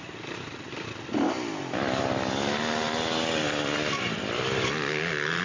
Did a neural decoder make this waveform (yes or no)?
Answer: no